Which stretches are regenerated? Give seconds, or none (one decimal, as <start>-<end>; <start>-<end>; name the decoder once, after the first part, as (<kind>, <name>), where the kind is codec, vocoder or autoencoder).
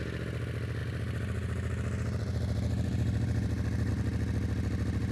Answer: 0.8-3.9 (vocoder, BigVGAN v2)